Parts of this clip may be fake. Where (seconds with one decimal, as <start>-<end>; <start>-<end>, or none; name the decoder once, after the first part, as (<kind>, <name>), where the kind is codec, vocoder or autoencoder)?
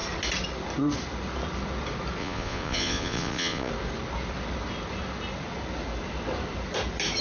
2.2-3.7 (vocoder, Vocos)